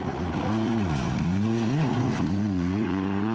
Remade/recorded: remade